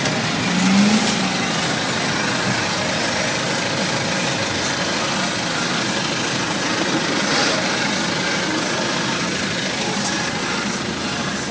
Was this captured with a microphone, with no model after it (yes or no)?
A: yes